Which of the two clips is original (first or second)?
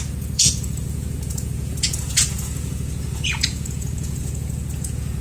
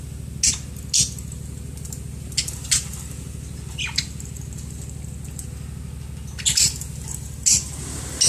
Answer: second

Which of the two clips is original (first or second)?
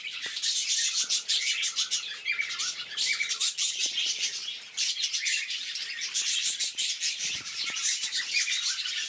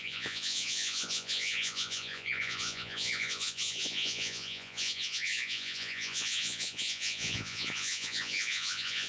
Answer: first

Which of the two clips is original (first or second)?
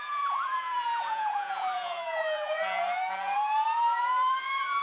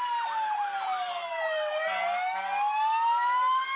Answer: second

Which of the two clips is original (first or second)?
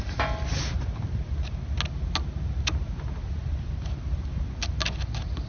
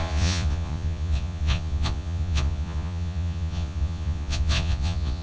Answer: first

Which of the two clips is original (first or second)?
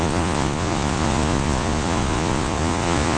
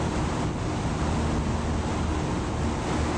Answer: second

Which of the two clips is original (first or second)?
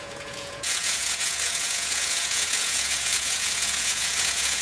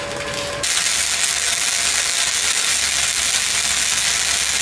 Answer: second